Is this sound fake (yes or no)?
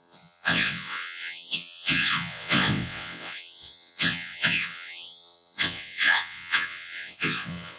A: yes